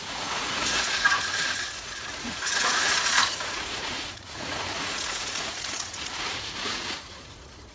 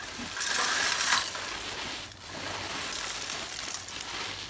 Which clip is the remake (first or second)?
first